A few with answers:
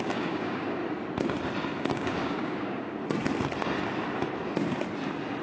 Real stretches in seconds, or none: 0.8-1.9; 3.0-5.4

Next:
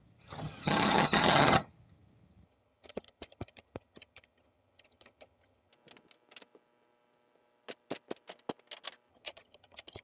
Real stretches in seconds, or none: 5.7-9.1

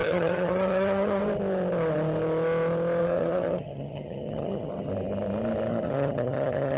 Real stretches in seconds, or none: 1.2-3.0; 4.9-5.7